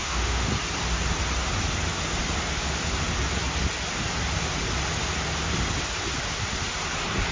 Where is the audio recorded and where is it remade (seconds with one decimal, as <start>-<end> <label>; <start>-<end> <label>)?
0.0-0.5 remade; 0.5-7.3 recorded